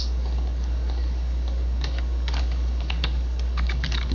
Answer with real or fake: fake